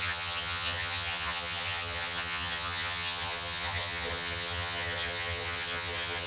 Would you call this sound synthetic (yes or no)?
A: yes